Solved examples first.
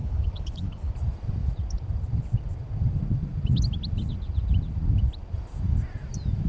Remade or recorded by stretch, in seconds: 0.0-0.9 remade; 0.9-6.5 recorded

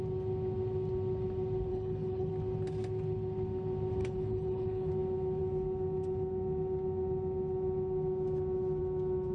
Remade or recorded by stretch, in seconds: 0.0-1.7 recorded; 1.7-2.3 remade; 2.3-4.0 recorded; 4.0-4.9 remade; 4.9-9.3 recorded

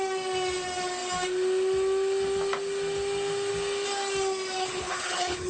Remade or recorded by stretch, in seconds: 0.0-4.6 recorded; 4.6-5.5 remade

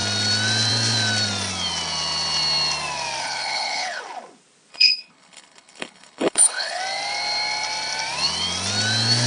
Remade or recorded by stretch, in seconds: 0.0-3.2 recorded; 3.2-4.0 remade; 4.0-4.7 recorded; 4.7-6.8 remade; 6.8-9.3 recorded

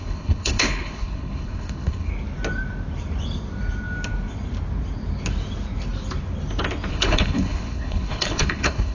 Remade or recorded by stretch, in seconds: 0.0-2.1 remade; 2.1-6.9 recorded; 6.9-8.9 remade

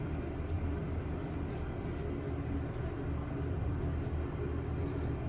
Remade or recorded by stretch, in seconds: 0.0-5.3 recorded